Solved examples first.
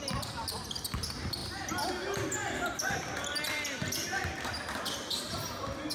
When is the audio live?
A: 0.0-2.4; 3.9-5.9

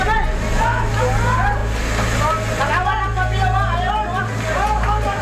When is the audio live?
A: 0.0-5.2

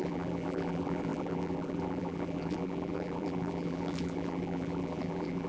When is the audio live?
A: none

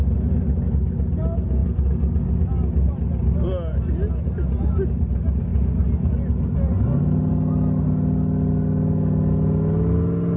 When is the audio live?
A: 0.0-10.4